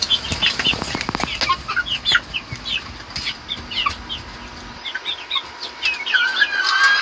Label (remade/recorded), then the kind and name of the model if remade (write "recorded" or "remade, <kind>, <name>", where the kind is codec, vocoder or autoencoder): recorded